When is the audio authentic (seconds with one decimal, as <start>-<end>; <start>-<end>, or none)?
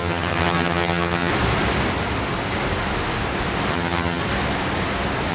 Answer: 1.3-3.7; 4.2-5.3